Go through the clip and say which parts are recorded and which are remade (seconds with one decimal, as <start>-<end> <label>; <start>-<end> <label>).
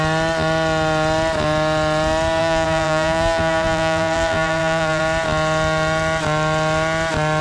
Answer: 0.0-2.4 recorded; 2.4-5.0 remade; 5.0-7.4 recorded